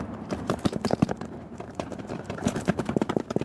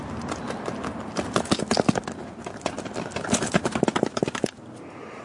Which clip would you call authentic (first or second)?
second